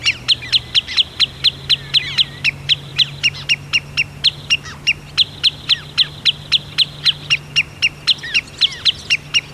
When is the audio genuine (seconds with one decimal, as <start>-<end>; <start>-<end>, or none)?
0.0-9.5